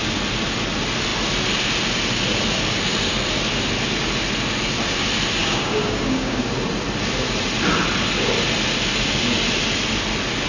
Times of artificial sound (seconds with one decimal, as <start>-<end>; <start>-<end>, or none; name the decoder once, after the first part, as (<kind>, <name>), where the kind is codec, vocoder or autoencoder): 5.4-6.5 (codec, DAC)